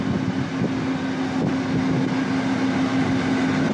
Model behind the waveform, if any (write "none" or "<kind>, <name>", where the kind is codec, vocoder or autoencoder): none